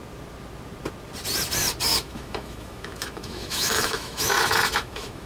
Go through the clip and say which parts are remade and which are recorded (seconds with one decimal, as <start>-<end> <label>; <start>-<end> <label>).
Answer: 0.0-1.9 recorded; 1.9-5.3 remade